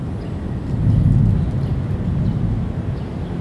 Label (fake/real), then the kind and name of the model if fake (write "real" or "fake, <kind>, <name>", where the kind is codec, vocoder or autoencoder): real